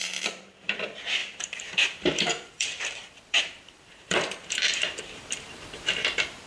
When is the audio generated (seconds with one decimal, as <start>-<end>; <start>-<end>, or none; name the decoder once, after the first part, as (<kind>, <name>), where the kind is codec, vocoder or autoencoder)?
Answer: 0.0-6.5 (vocoder, BigVGAN v2)